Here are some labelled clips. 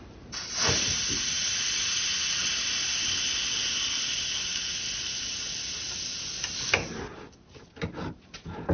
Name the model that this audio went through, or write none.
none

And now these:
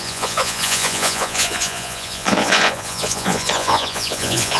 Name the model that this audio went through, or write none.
vocoder, Vocos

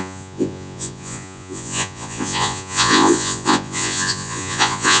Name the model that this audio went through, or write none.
vocoder, Vocos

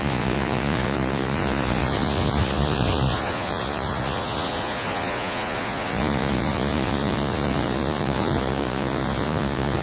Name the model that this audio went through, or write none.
vocoder, Vocos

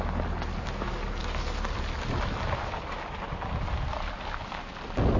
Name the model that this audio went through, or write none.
none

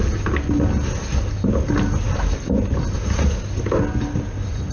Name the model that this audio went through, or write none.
none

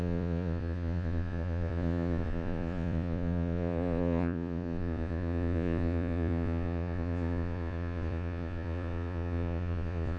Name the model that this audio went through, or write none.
vocoder, Vocos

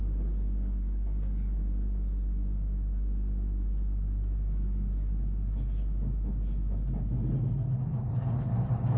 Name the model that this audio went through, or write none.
none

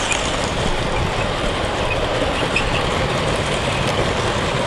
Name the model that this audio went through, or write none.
none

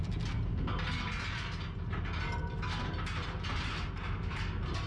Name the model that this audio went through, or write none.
none